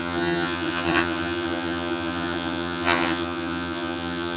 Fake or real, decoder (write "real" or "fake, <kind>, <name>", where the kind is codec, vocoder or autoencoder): fake, vocoder, HiFi-GAN